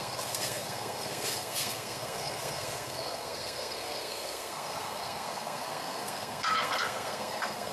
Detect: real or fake fake